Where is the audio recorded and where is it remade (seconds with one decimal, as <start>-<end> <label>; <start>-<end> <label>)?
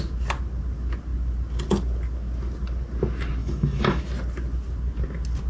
0.0-3.4 recorded; 3.4-4.0 remade; 4.0-5.5 recorded